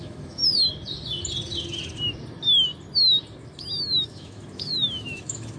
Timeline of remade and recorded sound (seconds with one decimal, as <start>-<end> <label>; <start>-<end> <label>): 0.0-0.4 remade; 0.4-3.4 recorded; 3.4-5.6 remade